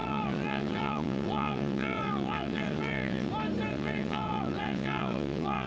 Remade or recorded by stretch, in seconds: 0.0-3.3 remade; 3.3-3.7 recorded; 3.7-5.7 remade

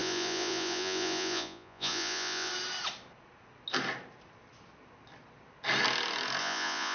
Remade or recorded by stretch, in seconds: 0.0-2.5 remade; 2.5-6.4 recorded; 6.4-6.9 remade

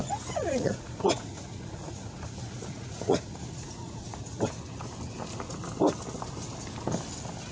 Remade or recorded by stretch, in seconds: 0.0-4.4 remade; 4.4-7.5 recorded

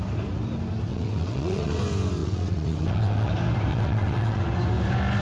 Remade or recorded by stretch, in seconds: 0.0-0.9 recorded; 0.9-1.8 remade; 1.8-2.2 recorded; 2.2-3.3 remade; 3.3-3.7 recorded; 3.7-4.4 remade; 4.4-5.2 recorded